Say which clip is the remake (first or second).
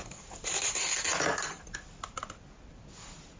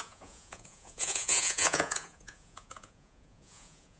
second